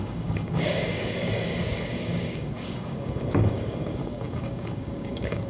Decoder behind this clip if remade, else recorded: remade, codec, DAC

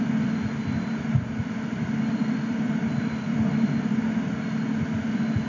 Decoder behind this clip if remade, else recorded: recorded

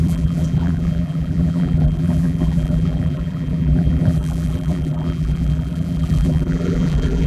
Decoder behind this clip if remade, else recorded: remade, vocoder, BigVGAN v2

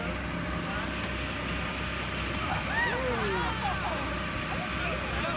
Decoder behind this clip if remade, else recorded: recorded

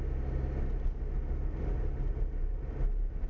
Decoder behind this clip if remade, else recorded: recorded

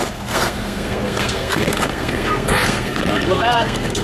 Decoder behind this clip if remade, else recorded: remade, codec, SNAC